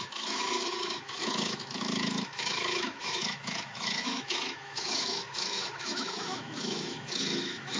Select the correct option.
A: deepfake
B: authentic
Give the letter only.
A